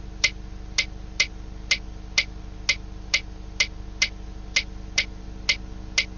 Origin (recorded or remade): recorded